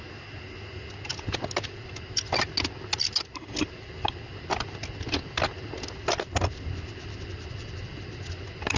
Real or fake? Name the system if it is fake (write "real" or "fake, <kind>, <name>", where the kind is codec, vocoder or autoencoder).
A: real